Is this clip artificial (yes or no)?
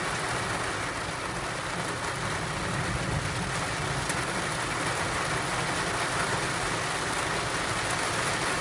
no